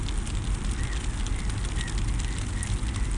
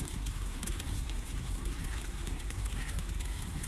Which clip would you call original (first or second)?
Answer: first